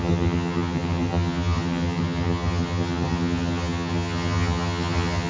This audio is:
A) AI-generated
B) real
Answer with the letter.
A